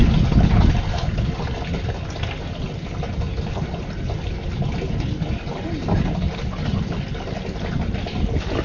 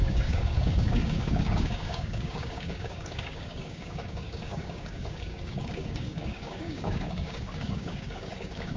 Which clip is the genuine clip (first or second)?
first